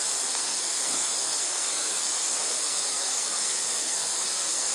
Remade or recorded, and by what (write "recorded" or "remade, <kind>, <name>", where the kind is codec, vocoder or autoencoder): remade, codec, SNAC